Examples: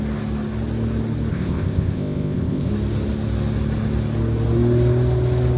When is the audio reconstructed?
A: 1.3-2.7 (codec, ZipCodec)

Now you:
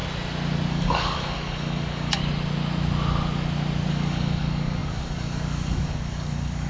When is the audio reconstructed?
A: 0.7-2.2 (codec, DAC); 3.9-6.7

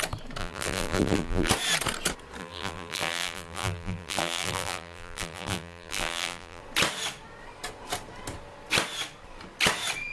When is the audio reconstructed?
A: 0.4-1.5 (vocoder, BigVGAN v2); 2.4-6.6

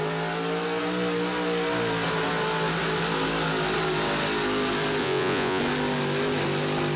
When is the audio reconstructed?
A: 5.0-5.6 (vocoder, Vocos)

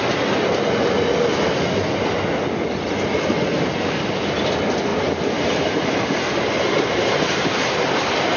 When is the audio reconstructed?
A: 4.9-8.0 (vocoder, BigVGAN v2)

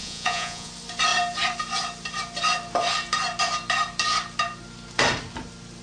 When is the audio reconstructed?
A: 0.0-0.7 (vocoder, Vocos)